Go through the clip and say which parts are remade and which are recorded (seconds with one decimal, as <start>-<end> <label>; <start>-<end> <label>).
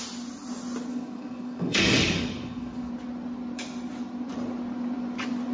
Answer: 0.0-0.9 recorded; 0.9-2.9 remade; 2.9-5.5 recorded